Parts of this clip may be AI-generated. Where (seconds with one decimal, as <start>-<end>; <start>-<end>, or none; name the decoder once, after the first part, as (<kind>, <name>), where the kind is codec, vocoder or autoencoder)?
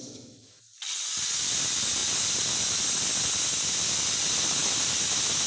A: 0.0-0.6 (autoencoder, DAC-VAE)